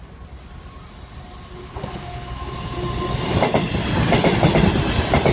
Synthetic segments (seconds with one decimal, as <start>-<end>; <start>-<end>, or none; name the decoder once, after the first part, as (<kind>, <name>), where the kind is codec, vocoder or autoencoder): none